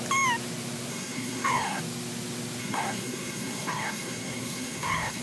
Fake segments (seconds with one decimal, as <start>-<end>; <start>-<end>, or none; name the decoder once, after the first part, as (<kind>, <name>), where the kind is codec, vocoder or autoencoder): 0.9-1.8 (codec, SNAC); 2.6-5.2